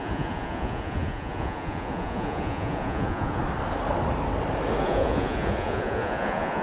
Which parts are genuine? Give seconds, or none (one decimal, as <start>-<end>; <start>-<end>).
3.4-4.8